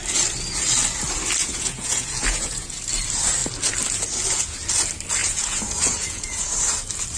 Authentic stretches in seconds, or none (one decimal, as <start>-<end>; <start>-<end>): 0.0-1.4; 2.9-5.2; 6.6-7.2